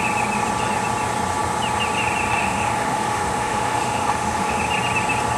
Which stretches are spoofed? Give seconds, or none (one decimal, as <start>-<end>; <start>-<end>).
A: 2.4-4.6